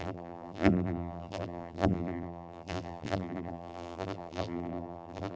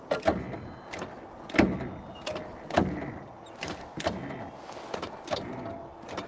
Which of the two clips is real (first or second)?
second